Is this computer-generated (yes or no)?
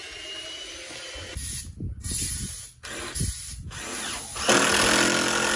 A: no